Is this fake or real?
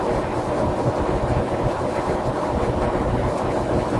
real